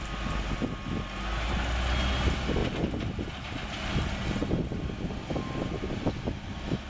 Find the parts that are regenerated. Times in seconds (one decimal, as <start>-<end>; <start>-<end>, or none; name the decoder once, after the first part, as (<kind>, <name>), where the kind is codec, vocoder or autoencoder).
none